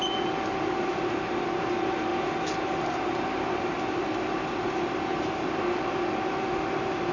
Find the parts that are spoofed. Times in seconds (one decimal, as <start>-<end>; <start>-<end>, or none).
none

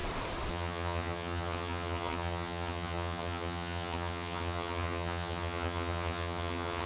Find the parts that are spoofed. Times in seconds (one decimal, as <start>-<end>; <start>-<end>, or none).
0.5-6.9

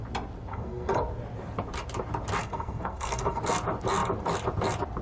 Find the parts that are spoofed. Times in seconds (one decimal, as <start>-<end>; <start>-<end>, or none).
0.5-1.0; 2.4-3.4

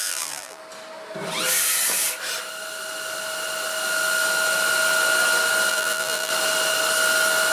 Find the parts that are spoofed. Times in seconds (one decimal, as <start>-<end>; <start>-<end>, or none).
0.0-0.6; 5.7-6.3

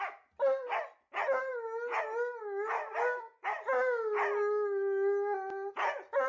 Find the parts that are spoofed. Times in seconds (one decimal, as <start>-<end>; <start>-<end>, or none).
none

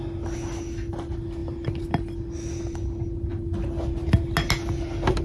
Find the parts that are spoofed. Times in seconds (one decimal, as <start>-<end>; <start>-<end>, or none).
none

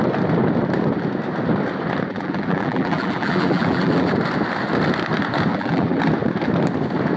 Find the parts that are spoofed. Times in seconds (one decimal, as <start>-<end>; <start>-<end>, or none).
2.1-4.1; 5.5-6.0

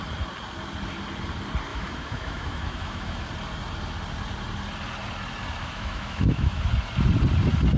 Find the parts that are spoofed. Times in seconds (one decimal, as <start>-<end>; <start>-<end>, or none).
1.7-3.3; 5.6-6.7